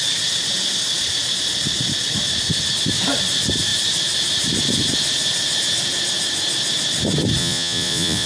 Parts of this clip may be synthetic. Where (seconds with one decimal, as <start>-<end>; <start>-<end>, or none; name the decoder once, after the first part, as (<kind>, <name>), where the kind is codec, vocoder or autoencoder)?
7.4-8.3 (vocoder, Vocos)